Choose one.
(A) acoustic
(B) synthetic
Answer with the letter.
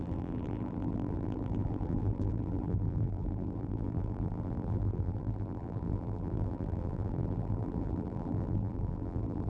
B